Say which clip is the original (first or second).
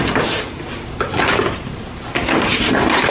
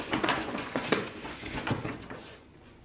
first